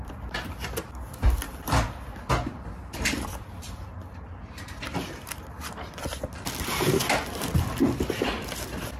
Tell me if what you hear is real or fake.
fake